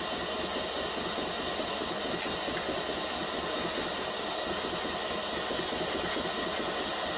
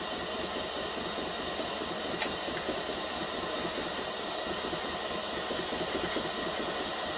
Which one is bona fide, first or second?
first